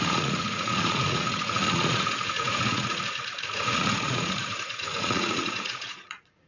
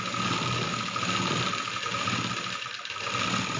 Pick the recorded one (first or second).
second